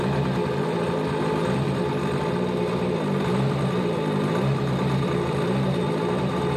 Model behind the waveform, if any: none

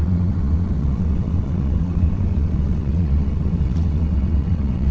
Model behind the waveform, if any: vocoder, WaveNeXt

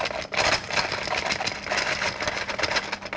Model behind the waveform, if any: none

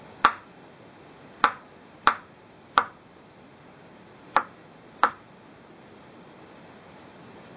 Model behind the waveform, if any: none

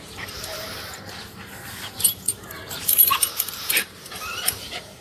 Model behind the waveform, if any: vocoder, BigVGAN v2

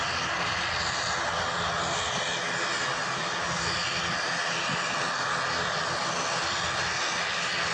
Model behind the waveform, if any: none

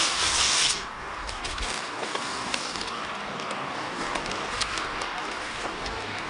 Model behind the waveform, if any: codec, DAC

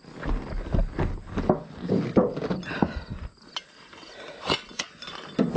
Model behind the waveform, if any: none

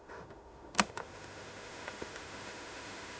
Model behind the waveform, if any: autoencoder, DAC-VAE